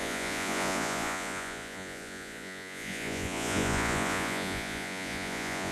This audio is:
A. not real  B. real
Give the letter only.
A